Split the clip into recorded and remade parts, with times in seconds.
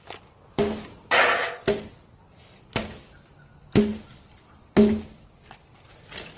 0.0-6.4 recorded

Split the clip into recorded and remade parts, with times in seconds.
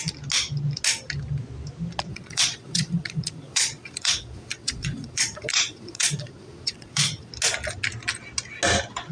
0.0-2.1 recorded; 2.1-7.3 remade; 7.3-9.1 recorded